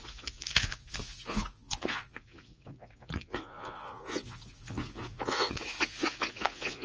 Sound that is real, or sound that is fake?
fake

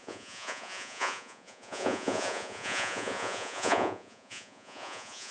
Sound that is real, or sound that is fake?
fake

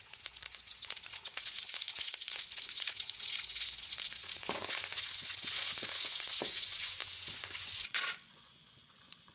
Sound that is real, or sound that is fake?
fake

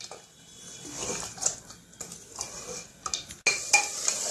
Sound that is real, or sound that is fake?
real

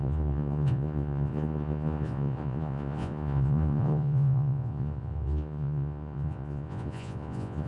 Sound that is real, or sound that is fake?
fake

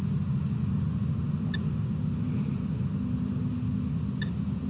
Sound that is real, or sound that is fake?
real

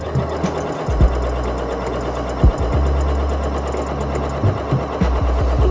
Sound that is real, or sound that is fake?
real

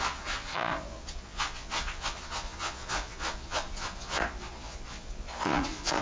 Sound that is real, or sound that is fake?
fake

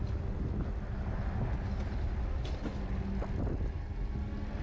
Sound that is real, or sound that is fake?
real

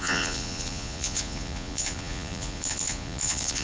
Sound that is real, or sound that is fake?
fake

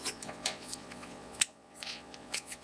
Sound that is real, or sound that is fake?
fake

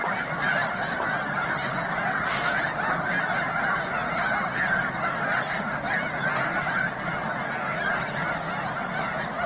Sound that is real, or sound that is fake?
real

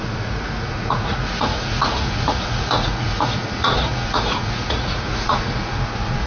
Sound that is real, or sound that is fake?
fake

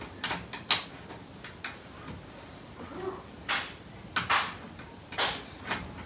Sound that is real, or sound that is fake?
real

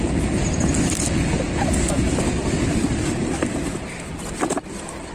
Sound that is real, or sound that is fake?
real